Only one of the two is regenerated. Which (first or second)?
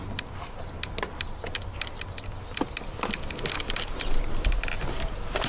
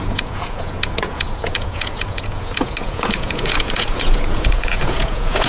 second